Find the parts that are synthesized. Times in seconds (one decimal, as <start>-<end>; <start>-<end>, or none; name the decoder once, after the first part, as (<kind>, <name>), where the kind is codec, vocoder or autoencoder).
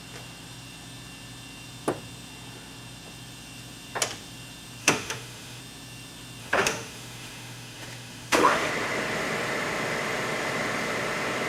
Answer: 4.8-5.6 (autoencoder, DAC-VAE); 6.4-8.7